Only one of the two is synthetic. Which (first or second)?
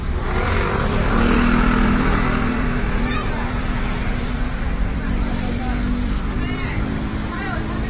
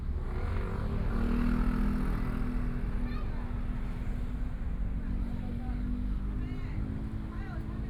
first